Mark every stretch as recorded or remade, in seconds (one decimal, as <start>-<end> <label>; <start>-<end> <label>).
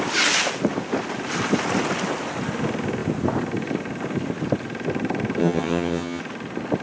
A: 0.0-5.4 recorded; 5.4-6.2 remade; 6.2-6.8 recorded